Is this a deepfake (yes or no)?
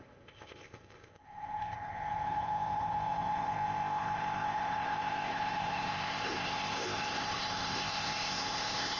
yes